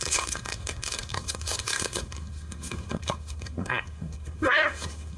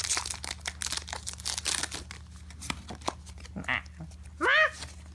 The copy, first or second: first